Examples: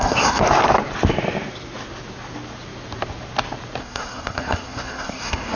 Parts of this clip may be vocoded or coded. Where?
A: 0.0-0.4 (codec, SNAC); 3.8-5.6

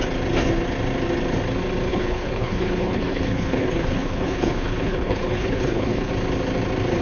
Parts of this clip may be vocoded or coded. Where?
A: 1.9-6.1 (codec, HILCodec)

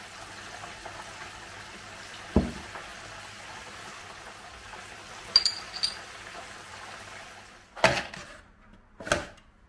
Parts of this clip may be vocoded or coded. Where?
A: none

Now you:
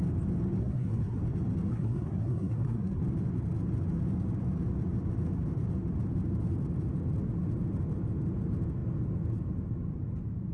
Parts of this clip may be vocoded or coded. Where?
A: 0.6-1.2 (codec, SNAC); 1.7-3.0

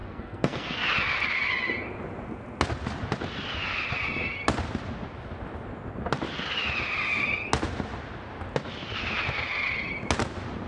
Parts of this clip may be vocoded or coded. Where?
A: 0.0-0.8 (codec, SNAC)

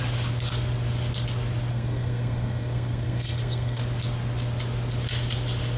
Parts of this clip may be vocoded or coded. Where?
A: 1.7-3.8 (codec, SNAC)